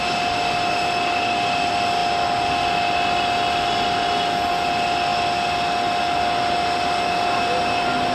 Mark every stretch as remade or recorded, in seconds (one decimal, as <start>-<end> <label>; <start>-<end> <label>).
0.0-8.1 recorded